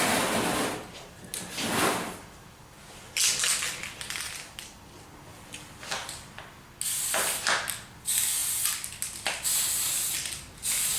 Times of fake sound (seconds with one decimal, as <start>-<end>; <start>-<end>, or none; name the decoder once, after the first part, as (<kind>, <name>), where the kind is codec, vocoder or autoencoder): none